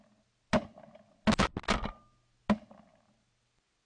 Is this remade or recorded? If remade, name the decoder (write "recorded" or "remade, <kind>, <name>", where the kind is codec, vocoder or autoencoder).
recorded